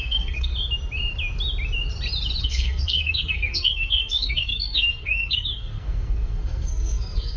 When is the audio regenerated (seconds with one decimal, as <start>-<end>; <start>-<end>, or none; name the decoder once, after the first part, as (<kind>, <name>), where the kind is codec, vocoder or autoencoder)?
0.0-0.5 (codec, SNAC); 2.4-7.4